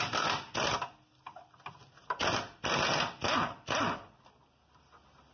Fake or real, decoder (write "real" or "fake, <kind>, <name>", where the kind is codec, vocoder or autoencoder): real